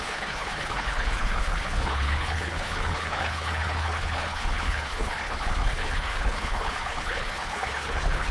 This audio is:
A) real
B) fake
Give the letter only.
B